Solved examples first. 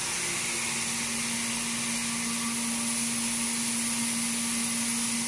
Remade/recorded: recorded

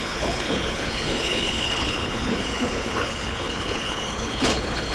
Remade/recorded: remade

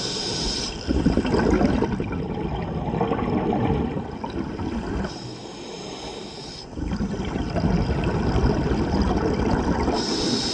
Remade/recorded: recorded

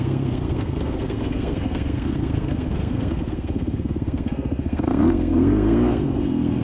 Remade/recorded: remade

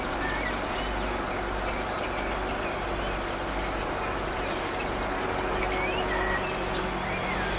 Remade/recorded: recorded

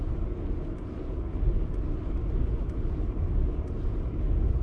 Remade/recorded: recorded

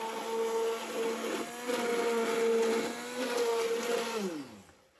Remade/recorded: recorded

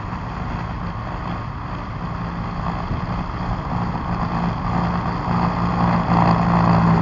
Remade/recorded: recorded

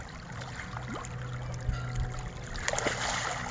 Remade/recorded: recorded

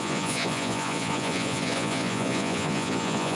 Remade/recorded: remade